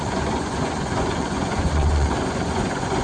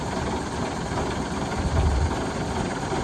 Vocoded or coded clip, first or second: first